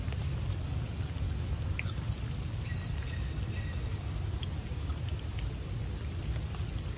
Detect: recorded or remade recorded